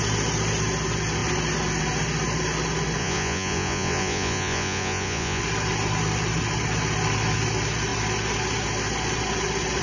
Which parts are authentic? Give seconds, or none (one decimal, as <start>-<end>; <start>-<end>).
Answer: 0.0-3.0; 5.4-9.8